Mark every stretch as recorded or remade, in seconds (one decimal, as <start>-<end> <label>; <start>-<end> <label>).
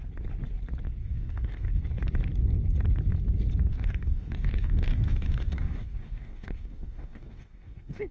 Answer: 0.0-1.0 recorded; 1.0-1.8 remade; 1.8-3.7 recorded; 3.7-8.1 remade